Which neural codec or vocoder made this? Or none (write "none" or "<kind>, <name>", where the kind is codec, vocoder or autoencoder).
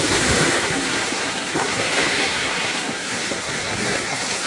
codec, SNAC